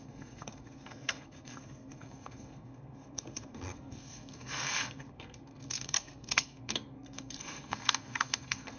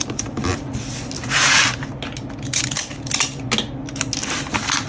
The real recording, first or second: second